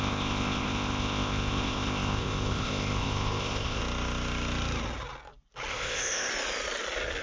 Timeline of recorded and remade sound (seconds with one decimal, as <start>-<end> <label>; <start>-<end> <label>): 0.0-3.8 remade; 3.8-5.7 recorded; 5.7-6.3 remade; 6.3-7.2 recorded